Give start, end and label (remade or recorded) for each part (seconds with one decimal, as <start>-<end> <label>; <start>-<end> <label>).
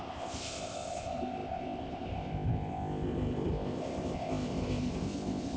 0.0-5.6 remade